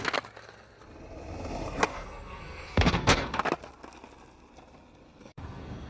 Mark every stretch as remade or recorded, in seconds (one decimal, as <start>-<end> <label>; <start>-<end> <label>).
0.0-1.9 recorded; 1.9-3.4 remade; 3.4-5.2 recorded; 5.2-5.9 remade